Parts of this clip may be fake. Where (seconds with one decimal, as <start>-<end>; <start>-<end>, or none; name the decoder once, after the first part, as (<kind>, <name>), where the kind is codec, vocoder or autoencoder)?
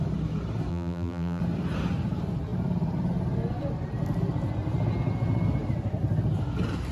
0.7-1.4 (vocoder, BigVGAN v2)